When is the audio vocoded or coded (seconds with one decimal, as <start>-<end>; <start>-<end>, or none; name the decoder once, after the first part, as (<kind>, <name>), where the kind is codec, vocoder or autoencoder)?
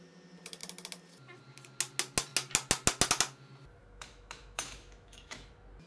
3.8-5.5 (autoencoder, DAC-VAE)